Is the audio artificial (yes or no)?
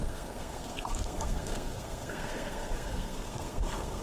yes